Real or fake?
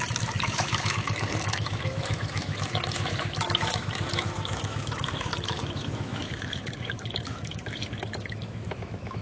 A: fake